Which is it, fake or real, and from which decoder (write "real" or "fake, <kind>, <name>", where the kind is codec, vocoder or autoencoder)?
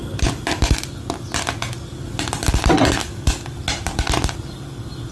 real